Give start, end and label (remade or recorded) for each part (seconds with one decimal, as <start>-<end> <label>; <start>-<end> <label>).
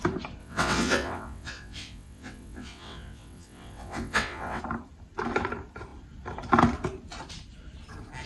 0.0-0.4 recorded; 0.4-4.6 remade; 4.6-8.3 recorded